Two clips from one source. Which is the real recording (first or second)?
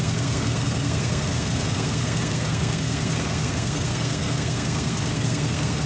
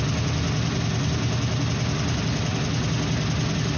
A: second